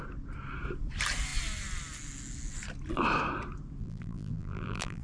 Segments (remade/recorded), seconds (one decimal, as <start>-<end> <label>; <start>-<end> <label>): 0.0-3.8 recorded; 3.8-5.0 remade